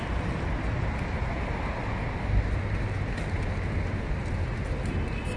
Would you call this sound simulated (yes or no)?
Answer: no